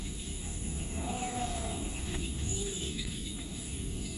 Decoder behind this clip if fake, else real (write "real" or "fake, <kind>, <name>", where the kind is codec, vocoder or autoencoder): fake, codec, DAC